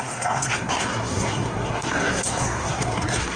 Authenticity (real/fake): fake